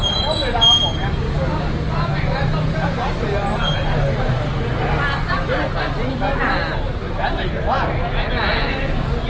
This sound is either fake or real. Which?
real